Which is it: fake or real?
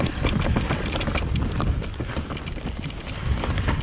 real